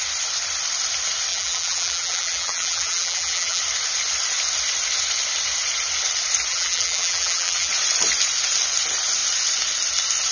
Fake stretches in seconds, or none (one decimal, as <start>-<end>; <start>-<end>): 1.3-3.6; 6.5-7.7